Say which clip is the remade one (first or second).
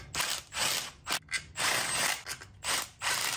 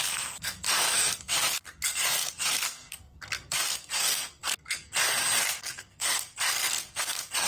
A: second